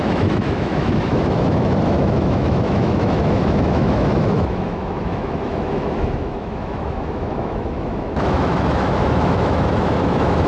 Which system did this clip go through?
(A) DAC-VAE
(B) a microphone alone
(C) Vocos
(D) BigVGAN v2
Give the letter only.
A